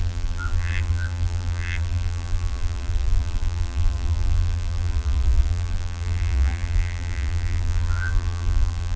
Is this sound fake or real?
fake